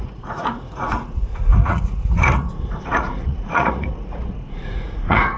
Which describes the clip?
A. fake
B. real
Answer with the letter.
A